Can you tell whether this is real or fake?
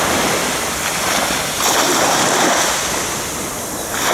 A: real